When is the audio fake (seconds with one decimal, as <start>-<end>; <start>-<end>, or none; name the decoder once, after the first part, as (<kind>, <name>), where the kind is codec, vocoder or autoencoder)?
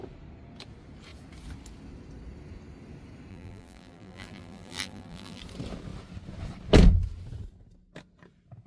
3.3-5.4 (vocoder, BigVGAN v2)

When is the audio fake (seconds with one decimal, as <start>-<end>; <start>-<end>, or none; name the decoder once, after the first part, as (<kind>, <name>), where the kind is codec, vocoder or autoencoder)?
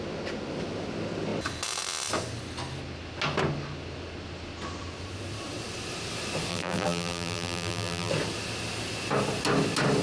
6.5-8.1 (vocoder, BigVGAN v2)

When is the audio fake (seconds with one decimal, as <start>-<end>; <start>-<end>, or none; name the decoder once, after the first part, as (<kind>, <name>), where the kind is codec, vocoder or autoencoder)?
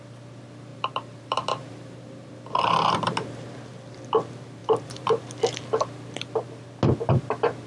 0.7-3.5 (vocoder, BigVGAN v2); 4.6-5.2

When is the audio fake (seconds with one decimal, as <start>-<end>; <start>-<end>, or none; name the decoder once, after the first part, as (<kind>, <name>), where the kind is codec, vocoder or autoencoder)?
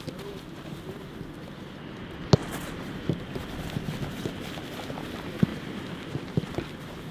none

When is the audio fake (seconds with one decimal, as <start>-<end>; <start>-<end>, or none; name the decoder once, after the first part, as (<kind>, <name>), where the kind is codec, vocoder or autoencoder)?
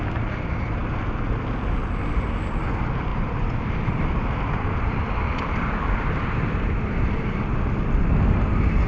3.1-7.4 (vocoder, BigVGAN v2)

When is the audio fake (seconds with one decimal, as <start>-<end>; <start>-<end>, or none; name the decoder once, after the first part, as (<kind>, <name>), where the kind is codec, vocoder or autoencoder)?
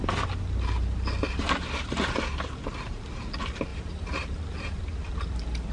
3.7-4.8 (vocoder, BigVGAN v2)